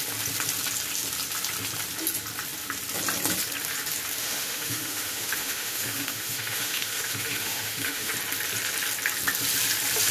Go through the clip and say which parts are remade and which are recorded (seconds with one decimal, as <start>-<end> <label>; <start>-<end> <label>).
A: 0.0-4.2 recorded; 4.2-8.1 remade; 8.1-10.1 recorded